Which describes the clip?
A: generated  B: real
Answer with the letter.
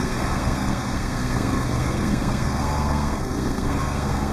A